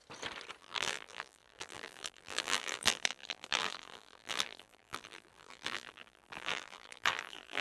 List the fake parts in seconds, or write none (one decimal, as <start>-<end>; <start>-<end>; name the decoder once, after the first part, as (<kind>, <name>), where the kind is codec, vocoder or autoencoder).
0.6-7.6 (vocoder, BigVGAN v2)